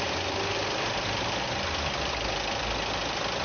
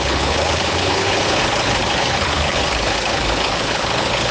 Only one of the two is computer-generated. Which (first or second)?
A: second